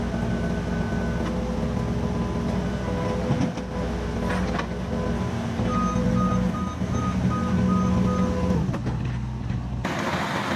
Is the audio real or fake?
real